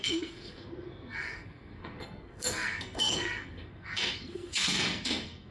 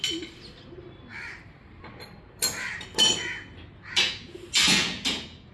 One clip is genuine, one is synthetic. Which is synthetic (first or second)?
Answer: first